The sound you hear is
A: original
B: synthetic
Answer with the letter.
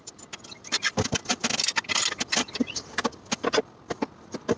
A